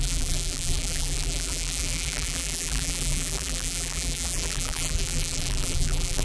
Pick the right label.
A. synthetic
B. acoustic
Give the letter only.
A